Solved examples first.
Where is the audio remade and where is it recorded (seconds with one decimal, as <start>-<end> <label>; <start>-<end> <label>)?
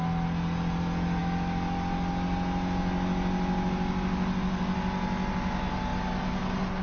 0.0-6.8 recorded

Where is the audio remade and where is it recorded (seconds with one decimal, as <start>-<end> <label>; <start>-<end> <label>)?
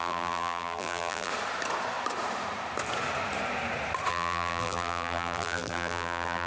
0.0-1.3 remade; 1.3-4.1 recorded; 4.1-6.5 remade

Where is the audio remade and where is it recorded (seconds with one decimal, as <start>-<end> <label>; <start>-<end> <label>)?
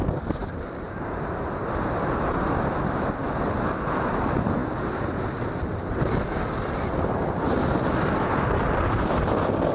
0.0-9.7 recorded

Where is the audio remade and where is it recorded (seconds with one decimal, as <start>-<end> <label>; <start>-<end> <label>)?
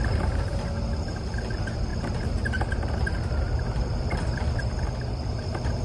0.0-5.8 recorded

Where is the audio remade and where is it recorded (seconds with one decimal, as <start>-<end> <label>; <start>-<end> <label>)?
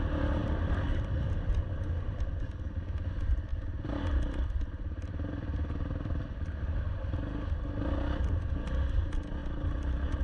0.0-3.5 recorded; 3.5-6.6 remade; 6.6-9.4 recorded; 9.4-10.2 remade